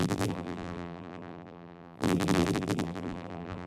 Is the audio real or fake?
fake